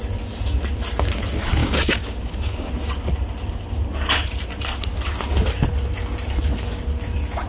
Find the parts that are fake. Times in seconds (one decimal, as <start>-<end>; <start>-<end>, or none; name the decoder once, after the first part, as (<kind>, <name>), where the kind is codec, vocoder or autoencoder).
1.6-2.7 (codec, DAC)